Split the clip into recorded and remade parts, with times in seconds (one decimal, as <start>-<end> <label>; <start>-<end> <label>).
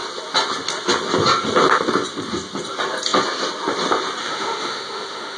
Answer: 0.0-4.2 recorded; 4.2-5.4 remade